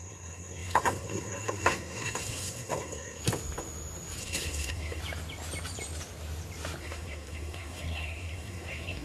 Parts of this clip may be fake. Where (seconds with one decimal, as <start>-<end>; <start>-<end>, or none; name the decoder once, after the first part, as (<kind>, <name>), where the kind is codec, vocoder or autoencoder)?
0.0-3.2 (codec, SNAC); 4.2-5.0; 6.8-9.0